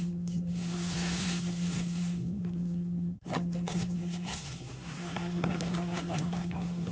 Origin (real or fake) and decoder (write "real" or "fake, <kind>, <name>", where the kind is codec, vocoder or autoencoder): fake, codec, SNAC